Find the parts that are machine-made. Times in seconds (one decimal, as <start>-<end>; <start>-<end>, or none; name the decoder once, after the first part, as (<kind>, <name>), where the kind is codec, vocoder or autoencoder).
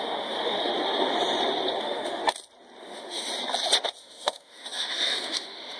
0.0-0.7 (autoencoder, DAC-VAE); 1.8-2.2; 2.8-3.3; 4.0-5.8